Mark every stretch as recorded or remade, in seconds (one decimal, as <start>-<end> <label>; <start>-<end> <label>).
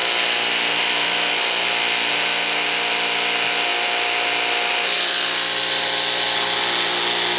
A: 0.0-7.4 recorded